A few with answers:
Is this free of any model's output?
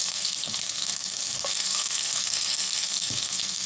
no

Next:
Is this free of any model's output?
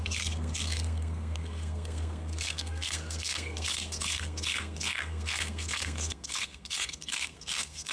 no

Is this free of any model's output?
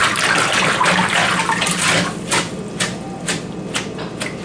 yes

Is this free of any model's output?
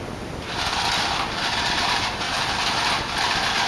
yes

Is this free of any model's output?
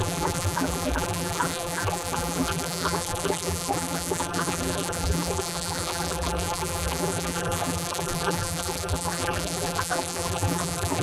no